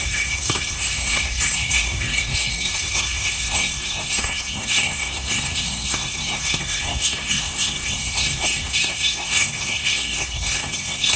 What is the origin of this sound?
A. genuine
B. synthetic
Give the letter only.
B